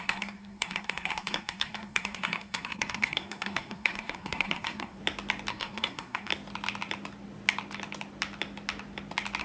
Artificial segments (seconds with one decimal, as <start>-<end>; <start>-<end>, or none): 0.0-5.0; 5.5-6.3